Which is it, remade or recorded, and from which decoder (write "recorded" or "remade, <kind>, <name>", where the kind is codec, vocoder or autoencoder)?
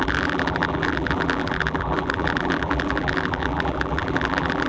remade, vocoder, BigVGAN v2